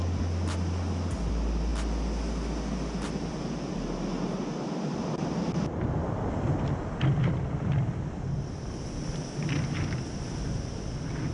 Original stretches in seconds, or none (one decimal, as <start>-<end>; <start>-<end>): 0.0-11.3